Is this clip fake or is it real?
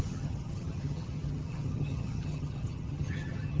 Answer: fake